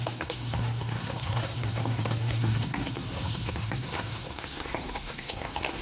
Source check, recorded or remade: remade